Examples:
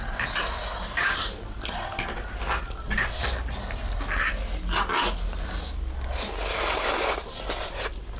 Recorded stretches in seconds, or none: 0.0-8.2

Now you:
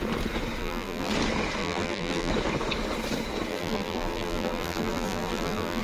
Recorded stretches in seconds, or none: 0.0-0.6; 1.1-1.6; 2.3-3.5

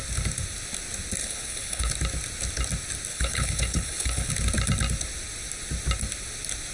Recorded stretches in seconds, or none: 0.0-1.2; 1.9-3.1; 4.3-6.7

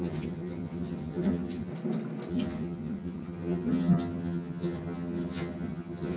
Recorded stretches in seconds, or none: 1.7-2.3